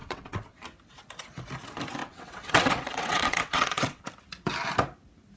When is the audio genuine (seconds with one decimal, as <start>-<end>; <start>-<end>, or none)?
0.5-2.0; 4.0-5.4